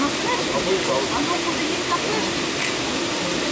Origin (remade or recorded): recorded